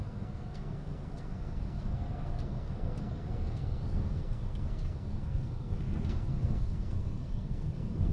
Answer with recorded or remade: remade